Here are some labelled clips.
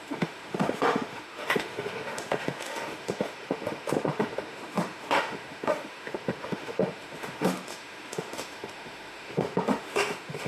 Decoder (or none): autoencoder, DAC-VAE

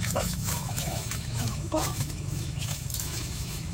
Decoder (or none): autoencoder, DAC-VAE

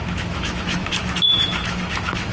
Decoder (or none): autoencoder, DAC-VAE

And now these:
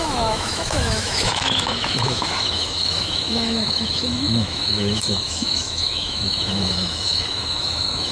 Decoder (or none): autoencoder, DAC-VAE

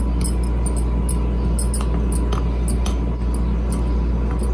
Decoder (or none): none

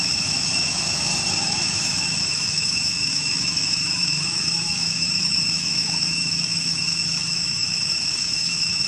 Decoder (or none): autoencoder, DAC-VAE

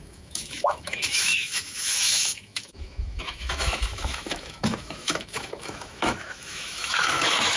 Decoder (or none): autoencoder, DAC-VAE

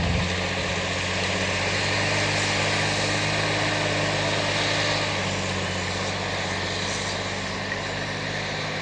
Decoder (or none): none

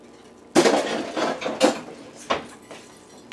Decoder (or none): none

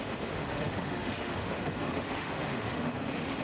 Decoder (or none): autoencoder, DAC-VAE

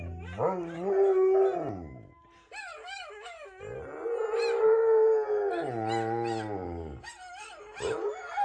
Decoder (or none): none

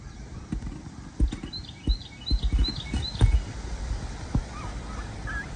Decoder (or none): none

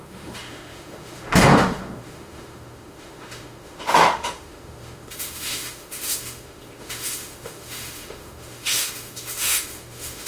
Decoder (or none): autoencoder, DAC-VAE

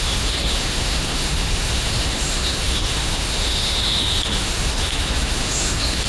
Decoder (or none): autoencoder, DAC-VAE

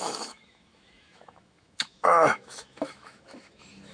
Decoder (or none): autoencoder, DAC-VAE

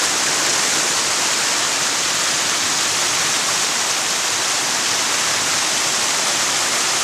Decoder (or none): none